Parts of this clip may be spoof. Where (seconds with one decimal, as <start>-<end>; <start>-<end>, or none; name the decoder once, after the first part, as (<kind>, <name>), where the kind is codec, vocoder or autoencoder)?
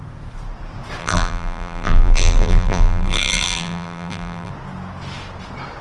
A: 1.0-4.5 (vocoder, BigVGAN v2)